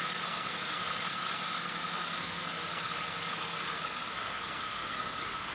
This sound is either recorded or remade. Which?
remade